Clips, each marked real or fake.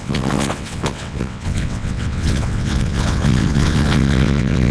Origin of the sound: fake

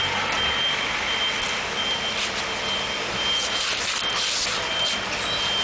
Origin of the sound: real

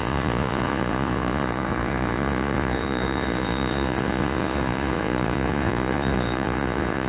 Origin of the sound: fake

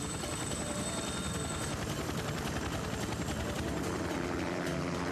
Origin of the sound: fake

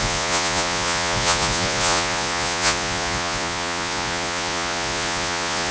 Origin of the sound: fake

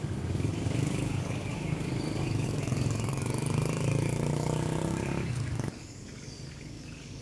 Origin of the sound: fake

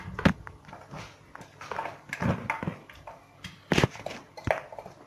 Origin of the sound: real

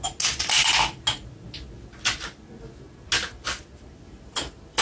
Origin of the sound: real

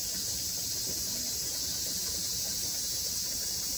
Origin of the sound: fake